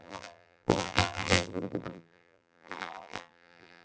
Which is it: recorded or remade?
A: remade